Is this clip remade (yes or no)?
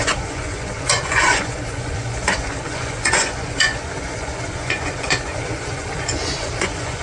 yes